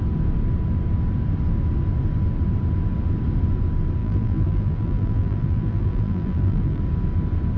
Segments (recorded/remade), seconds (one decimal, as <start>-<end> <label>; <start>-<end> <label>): 0.0-4.0 recorded; 4.0-6.8 remade; 6.8-7.6 recorded